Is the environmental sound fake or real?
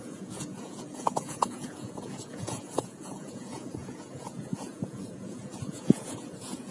fake